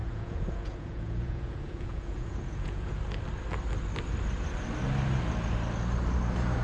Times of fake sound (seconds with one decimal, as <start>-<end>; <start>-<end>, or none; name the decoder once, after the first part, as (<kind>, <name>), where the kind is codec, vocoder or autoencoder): 0.0-3.0 (vocoder, Vocos)